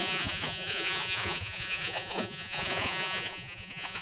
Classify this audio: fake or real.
fake